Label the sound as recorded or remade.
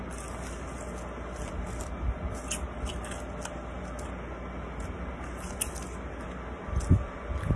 recorded